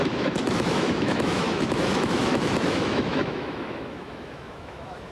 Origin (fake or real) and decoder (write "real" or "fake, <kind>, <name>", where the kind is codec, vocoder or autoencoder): fake, autoencoder, DAC-VAE